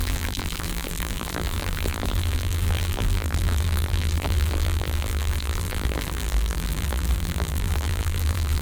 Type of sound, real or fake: fake